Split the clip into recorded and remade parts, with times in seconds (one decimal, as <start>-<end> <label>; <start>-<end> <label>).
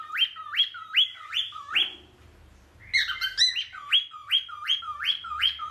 0.0-5.7 recorded